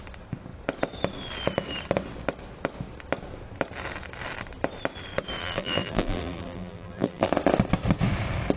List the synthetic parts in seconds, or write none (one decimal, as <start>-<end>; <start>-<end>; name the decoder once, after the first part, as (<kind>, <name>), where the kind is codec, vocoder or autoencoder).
5.4-7.3 (vocoder, BigVGAN v2)